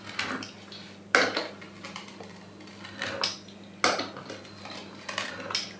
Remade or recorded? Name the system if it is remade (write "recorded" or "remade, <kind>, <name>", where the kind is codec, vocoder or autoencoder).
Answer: recorded